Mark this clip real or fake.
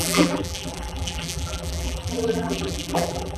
fake